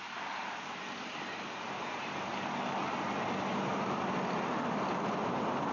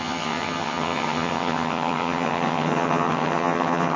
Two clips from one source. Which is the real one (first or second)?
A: first